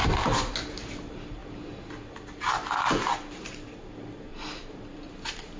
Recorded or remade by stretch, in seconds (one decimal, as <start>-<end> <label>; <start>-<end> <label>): 0.0-4.3 recorded; 4.3-5.1 remade; 5.1-5.6 recorded